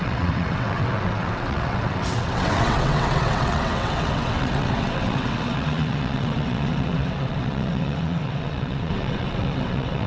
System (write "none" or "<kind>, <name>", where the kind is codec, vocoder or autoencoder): vocoder, WaveNeXt